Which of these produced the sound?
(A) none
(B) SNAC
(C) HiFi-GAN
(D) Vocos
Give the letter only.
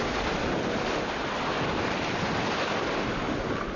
A